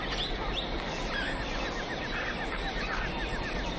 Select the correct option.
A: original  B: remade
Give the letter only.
A